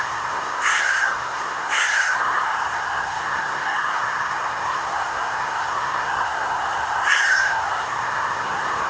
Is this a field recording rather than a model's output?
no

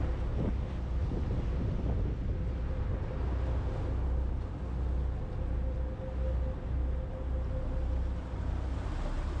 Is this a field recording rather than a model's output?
yes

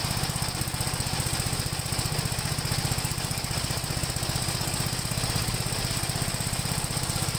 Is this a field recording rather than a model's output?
yes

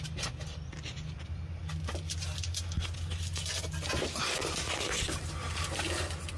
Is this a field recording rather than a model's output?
yes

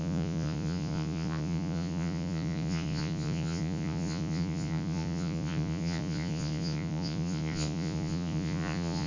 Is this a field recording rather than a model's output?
no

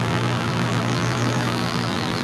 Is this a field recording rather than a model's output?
no